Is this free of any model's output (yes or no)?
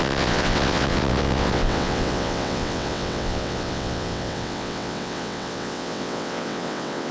no